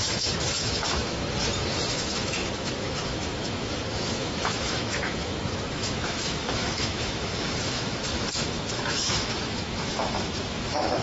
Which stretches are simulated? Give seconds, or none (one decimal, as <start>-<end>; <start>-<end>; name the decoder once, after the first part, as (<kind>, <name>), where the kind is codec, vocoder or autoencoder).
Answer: 0.0-1.2 (autoencoder, DAC-VAE); 1.9-11.0